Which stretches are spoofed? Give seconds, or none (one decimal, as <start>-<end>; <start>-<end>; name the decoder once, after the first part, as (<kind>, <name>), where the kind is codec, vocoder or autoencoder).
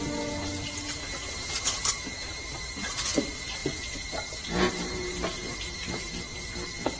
1.0-1.9 (vocoder, BigVGAN v2); 3.6-6.5